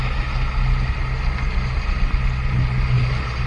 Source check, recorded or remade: recorded